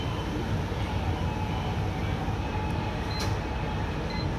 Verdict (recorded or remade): recorded